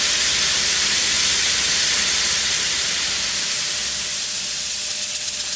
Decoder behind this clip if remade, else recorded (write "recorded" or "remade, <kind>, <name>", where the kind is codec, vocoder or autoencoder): recorded